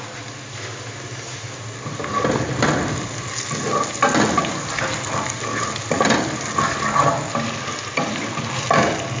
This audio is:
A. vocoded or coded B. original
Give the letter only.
B